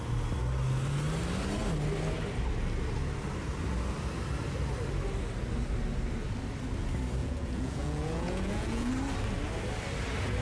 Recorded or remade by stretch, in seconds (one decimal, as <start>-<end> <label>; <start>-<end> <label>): 0.0-7.2 recorded; 7.2-8.9 remade; 8.9-10.4 recorded